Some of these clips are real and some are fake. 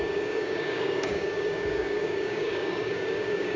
fake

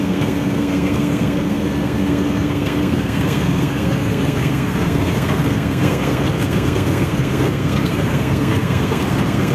fake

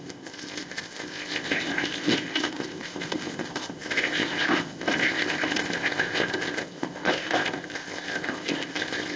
fake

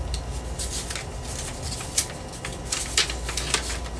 real